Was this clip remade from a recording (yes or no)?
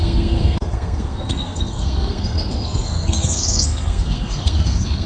yes